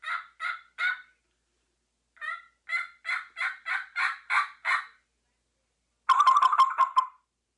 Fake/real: real